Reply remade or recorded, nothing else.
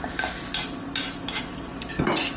recorded